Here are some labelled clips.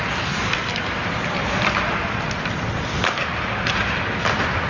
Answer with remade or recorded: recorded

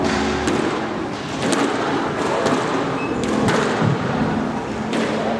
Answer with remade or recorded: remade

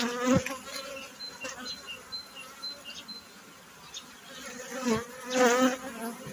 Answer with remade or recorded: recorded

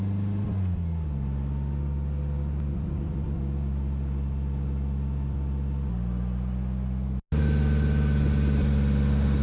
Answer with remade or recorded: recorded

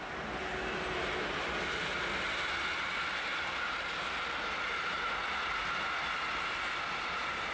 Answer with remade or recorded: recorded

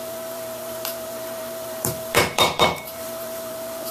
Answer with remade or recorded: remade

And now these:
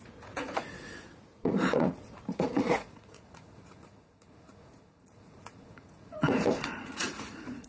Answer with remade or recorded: remade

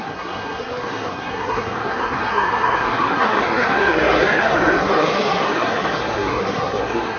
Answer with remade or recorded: remade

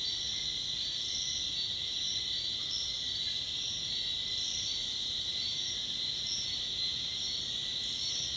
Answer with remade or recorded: recorded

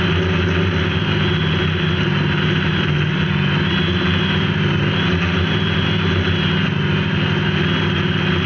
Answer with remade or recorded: recorded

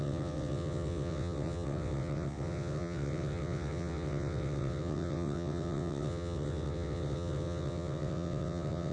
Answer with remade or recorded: remade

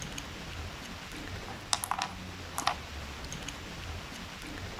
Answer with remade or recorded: recorded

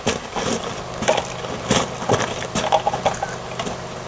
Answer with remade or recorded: recorded